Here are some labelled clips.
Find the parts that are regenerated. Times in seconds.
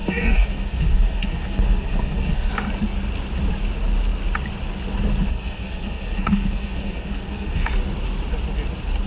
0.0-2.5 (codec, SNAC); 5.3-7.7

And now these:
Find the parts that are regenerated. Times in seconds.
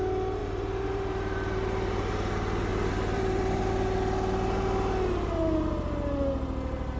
0.4-2.3 (vocoder, BigVGAN v2); 2.7-3.7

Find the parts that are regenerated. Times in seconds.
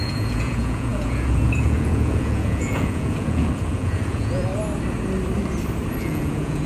0.0-4.4 (vocoder, Vocos); 6.0-6.7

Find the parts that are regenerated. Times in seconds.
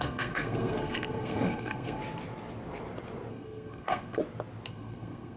0.0-2.0 (codec, SNAC); 3.3-4.2; 4.7-5.4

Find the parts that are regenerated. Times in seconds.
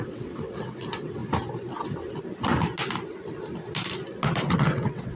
0.0-1.2 (vocoder, WaveNeXt); 4.3-5.2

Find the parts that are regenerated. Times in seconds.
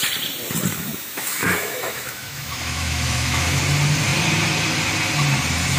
0.7-3.6 (autoencoder, DAC-VAE)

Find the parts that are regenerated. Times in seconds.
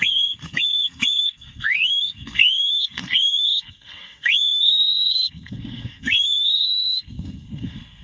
0.0-8.0 (codec, SNAC)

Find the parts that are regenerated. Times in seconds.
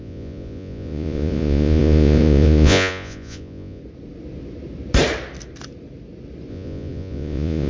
0.0-3.8 (vocoder, Vocos); 6.5-7.7